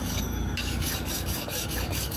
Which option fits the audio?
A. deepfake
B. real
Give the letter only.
A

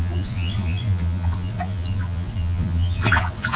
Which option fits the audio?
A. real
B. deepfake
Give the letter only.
B